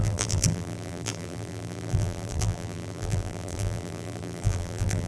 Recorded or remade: remade